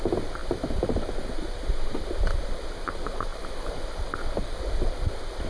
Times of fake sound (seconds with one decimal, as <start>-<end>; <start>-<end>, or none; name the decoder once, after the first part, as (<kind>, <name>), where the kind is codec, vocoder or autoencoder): 0.4-1.1 (vocoder, BigVGAN v2); 3.3-5.5